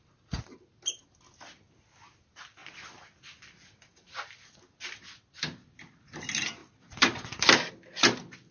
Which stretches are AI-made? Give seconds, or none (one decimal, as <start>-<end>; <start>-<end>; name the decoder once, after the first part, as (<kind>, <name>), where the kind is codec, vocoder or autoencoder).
none

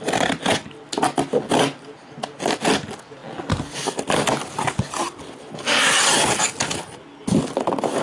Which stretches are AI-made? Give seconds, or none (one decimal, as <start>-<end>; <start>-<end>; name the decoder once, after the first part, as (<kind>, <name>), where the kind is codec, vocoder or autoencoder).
none